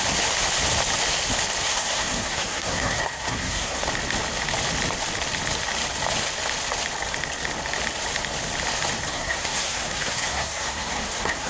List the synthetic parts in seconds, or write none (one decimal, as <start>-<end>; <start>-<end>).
1.7-3.8; 9.1-11.5